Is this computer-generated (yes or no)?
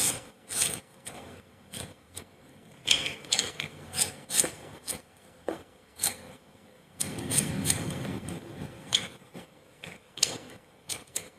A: yes